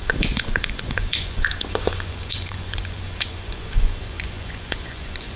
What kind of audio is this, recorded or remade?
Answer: remade